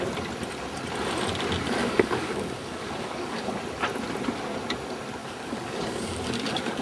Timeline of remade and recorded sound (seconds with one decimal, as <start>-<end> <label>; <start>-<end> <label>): 0.0-1.8 recorded; 1.8-3.5 remade; 3.5-5.2 recorded; 5.2-6.8 remade